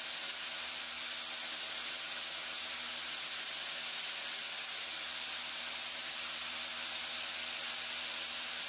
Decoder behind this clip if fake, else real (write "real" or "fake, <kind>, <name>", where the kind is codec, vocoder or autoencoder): real